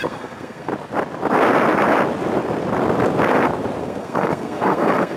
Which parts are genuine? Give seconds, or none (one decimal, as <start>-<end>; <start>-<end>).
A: 0.7-3.8